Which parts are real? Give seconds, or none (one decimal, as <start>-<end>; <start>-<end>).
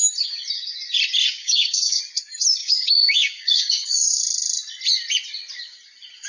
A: 0.0-1.2; 2.0-2.6; 4.2-6.3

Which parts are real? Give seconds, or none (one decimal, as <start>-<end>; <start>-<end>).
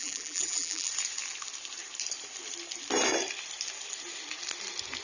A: 0.9-5.0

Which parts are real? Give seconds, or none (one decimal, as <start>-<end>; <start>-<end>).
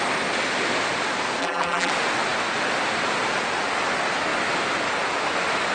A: 0.0-1.4; 1.9-5.7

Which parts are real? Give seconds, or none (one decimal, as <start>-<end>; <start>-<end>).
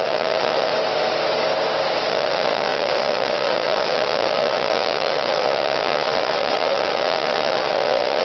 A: 0.7-2.1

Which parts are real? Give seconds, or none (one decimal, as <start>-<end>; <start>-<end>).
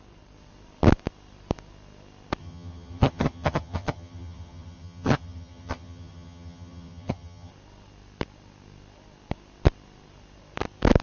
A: 0.0-2.4; 7.5-11.0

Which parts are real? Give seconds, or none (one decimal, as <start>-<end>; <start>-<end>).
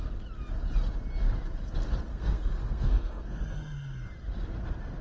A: 0.0-2.1; 3.4-5.0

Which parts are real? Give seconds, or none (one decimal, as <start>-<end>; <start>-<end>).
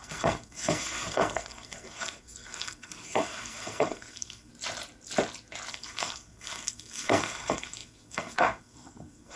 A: 4.5-5.7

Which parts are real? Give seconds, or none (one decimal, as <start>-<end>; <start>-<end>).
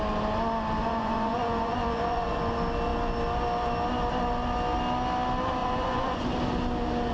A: 0.0-0.8; 2.4-5.6; 6.3-7.1